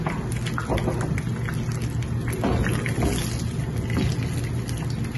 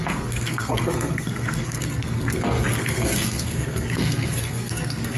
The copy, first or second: second